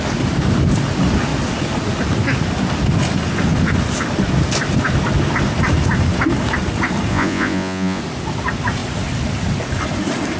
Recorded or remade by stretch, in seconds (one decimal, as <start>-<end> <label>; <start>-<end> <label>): 0.0-7.1 recorded; 7.1-8.0 remade; 8.0-10.4 recorded